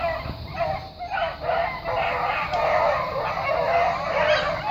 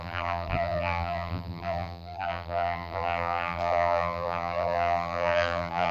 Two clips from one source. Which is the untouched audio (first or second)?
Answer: first